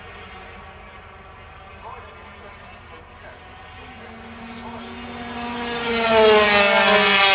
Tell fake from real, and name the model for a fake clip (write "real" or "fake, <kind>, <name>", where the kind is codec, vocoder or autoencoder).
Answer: real